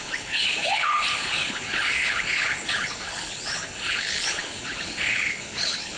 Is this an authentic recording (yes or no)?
no